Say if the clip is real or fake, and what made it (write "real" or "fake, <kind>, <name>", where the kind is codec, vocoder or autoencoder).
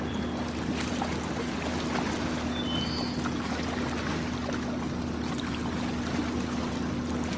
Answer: real